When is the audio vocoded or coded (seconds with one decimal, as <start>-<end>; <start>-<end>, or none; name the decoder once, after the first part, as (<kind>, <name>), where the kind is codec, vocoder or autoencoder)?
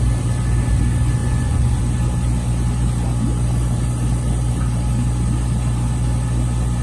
1.2-1.8 (vocoder, Vocos)